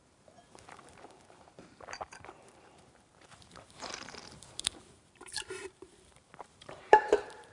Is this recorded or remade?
remade